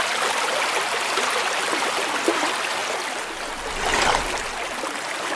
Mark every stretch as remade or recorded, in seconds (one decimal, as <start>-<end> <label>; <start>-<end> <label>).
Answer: 0.0-5.4 recorded

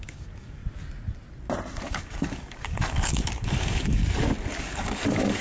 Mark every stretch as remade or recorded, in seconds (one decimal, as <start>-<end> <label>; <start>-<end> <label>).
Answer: 0.0-0.6 remade; 0.6-1.8 recorded; 1.8-4.0 remade; 4.0-4.6 recorded; 4.6-5.4 remade

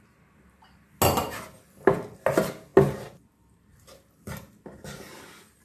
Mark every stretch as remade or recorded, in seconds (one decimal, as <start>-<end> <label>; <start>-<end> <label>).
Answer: 0.0-5.6 recorded

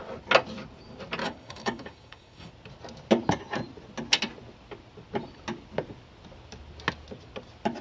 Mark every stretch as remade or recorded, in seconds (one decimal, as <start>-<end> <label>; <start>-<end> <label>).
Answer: 0.0-1.2 recorded; 1.2-2.5 remade; 2.5-7.8 recorded

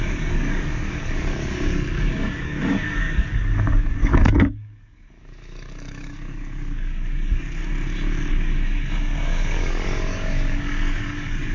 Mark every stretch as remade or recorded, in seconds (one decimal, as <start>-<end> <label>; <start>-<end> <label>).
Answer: 0.0-7.6 remade; 7.6-8.3 recorded; 8.3-11.5 remade

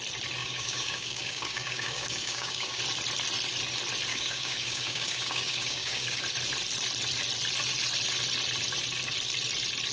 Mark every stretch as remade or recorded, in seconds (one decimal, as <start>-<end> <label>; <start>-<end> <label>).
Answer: 0.0-0.4 recorded; 0.4-2.8 remade; 2.8-4.1 recorded; 4.1-6.2 remade; 6.2-9.9 recorded

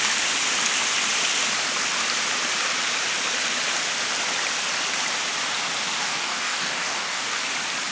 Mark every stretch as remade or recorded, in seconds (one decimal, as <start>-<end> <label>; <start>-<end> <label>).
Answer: 0.0-6.0 recorded; 6.0-7.4 remade; 7.4-7.9 recorded